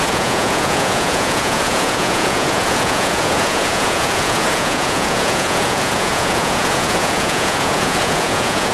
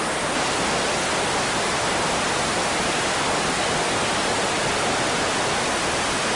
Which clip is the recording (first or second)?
second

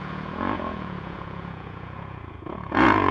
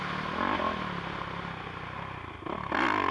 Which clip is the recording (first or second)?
second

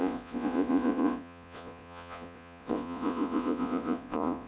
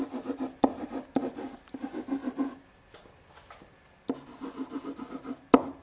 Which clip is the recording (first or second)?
second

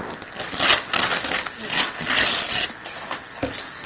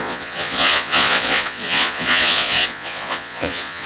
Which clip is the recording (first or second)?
first